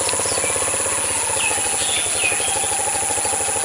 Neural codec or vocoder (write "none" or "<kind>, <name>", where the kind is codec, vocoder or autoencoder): none